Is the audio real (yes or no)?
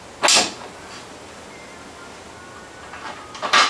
yes